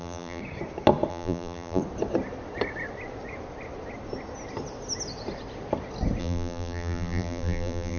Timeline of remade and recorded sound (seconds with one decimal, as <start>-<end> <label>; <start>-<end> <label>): 0.0-0.4 remade; 0.4-1.1 recorded; 1.1-1.8 remade; 1.8-6.2 recorded; 6.2-8.0 remade